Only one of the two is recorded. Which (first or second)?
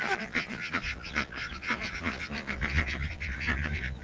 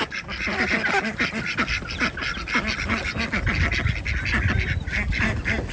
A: second